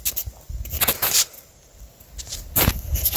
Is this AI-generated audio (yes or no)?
no